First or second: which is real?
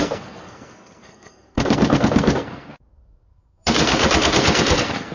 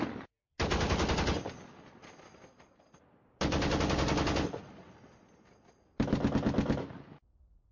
second